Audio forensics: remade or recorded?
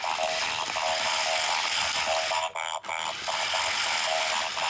recorded